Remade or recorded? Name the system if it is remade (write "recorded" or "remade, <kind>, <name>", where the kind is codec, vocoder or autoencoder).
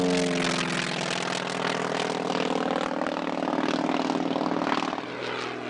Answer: recorded